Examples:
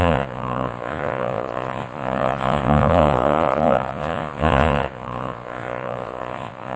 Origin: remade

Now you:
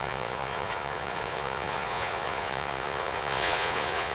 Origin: remade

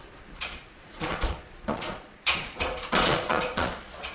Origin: remade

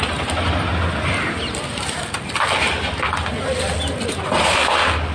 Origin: recorded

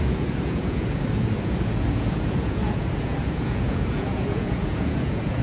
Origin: remade